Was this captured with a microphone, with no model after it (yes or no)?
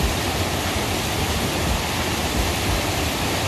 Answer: yes